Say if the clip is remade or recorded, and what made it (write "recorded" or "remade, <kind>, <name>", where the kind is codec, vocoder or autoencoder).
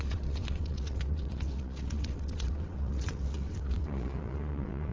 remade, vocoder, WaveNeXt